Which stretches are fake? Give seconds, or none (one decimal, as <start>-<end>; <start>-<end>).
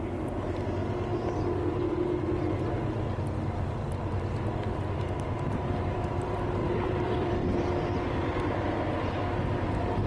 6.6-7.9